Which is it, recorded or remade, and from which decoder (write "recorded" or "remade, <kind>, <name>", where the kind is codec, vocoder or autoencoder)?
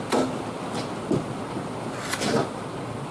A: recorded